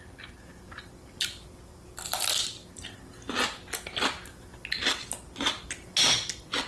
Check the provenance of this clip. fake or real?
real